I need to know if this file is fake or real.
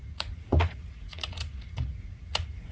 fake